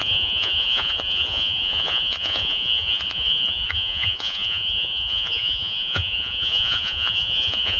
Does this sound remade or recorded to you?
remade